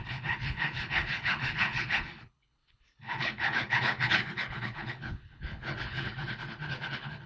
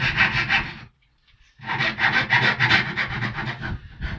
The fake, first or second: first